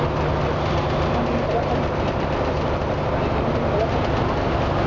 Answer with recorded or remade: recorded